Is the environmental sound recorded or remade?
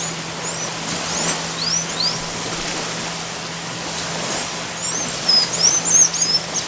recorded